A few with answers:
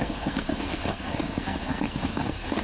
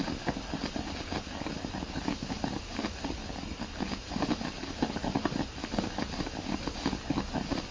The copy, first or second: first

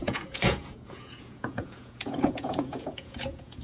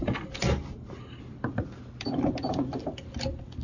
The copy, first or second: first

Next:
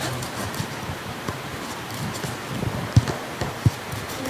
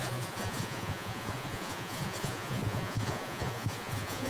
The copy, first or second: second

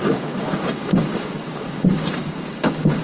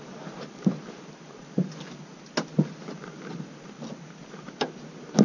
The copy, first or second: first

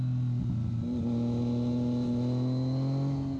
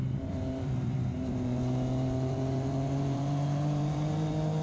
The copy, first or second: second